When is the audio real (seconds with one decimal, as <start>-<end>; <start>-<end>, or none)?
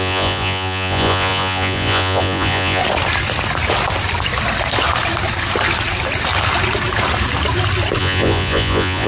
2.8-8.0